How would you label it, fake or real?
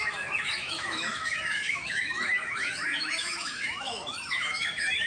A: fake